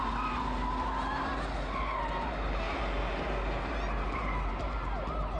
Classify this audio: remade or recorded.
recorded